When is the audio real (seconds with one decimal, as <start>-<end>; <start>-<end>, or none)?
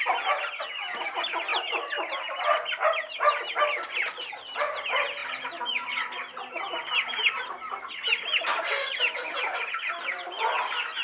0.0-11.0